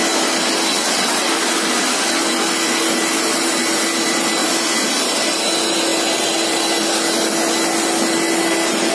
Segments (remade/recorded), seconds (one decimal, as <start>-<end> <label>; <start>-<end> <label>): 0.0-0.7 recorded; 0.7-1.3 remade; 1.3-8.9 recorded